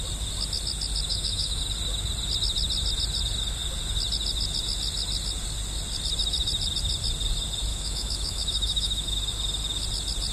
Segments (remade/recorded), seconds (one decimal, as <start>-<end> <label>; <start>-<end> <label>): 0.0-1.1 recorded; 1.1-1.6 remade; 1.6-7.7 recorded; 7.7-9.2 remade; 9.2-10.3 recorded